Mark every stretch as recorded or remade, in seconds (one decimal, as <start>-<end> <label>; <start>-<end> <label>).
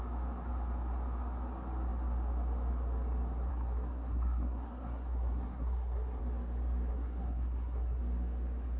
0.0-3.5 recorded; 3.5-6.2 remade; 6.2-6.9 recorded; 6.9-8.0 remade; 8.0-8.8 recorded